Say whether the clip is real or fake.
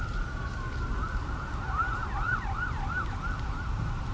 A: fake